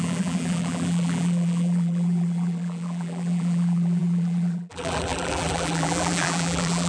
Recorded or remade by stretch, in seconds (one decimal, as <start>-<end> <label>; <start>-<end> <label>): 0.0-6.9 remade